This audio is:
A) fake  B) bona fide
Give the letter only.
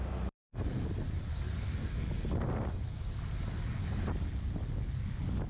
A